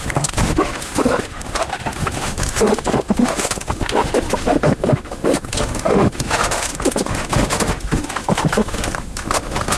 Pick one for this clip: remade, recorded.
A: remade